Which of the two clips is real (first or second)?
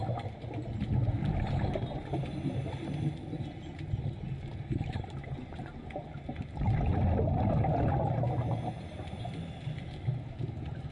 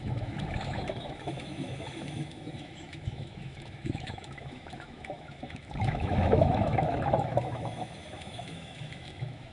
first